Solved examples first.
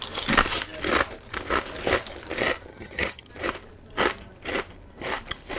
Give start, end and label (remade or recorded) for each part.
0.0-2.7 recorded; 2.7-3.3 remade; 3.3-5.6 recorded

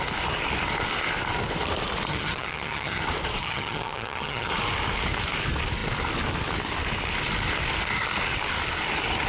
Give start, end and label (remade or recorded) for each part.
0.0-2.1 recorded; 2.1-3.0 remade; 3.0-3.4 recorded; 3.4-4.5 remade; 4.5-9.3 recorded

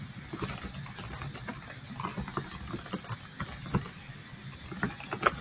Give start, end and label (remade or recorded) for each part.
0.0-5.4 recorded

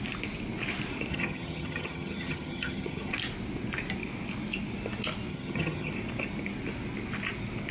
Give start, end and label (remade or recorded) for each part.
0.0-1.1 recorded; 1.1-3.1 remade; 3.1-5.3 recorded; 5.3-5.9 remade; 5.9-7.7 recorded

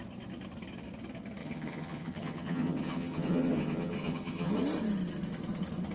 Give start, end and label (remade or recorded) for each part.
0.0-1.4 recorded; 1.4-4.5 remade; 4.5-5.9 recorded

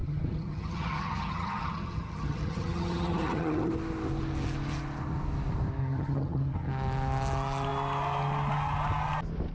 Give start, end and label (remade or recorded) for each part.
0.0-3.7 remade; 3.7-5.8 recorded; 5.8-6.7 remade; 6.7-9.5 recorded